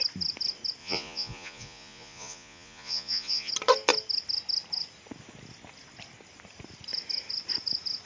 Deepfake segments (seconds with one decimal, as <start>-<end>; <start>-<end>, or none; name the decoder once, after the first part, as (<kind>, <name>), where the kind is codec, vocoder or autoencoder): 0.8-3.5 (vocoder, Vocos)